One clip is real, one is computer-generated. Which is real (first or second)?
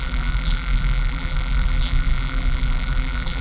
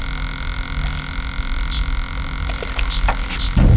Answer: second